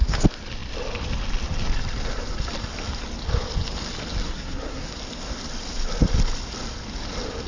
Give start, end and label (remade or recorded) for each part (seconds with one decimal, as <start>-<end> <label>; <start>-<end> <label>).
0.0-4.2 recorded; 4.2-4.9 remade; 4.9-7.5 recorded